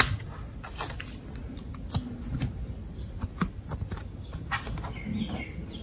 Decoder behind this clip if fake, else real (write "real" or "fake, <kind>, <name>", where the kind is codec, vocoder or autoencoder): real